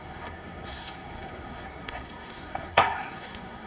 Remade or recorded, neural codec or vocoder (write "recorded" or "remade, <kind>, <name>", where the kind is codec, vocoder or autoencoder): remade, codec, SNAC